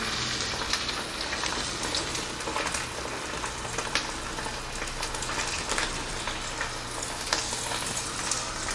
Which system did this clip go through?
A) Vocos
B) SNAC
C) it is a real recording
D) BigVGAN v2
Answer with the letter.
C